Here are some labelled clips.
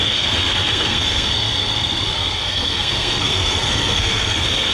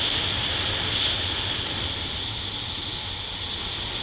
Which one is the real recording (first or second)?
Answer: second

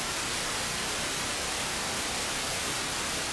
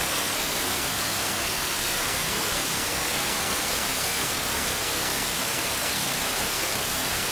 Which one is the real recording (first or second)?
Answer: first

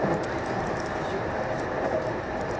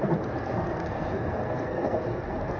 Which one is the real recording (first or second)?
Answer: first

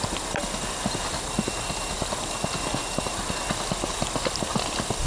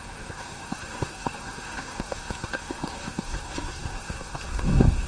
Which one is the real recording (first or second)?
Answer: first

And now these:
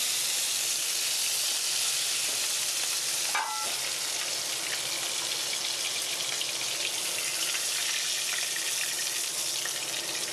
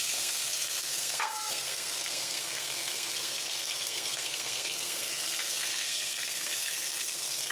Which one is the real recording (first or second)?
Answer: first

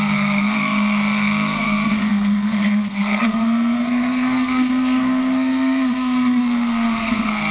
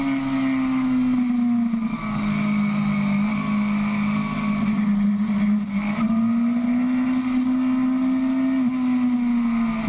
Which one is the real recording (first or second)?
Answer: second